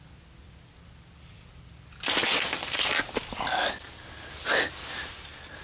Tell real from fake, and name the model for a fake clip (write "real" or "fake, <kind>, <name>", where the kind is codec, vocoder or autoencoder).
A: real